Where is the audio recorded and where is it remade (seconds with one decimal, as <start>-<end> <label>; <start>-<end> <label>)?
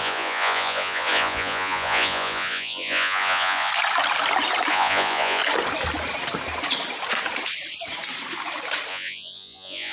0.0-3.7 remade; 3.7-4.7 recorded; 4.7-5.4 remade; 5.4-8.9 recorded; 8.9-9.9 remade